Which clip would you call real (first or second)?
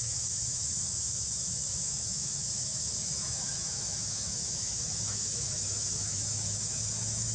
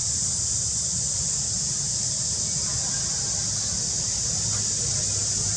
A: second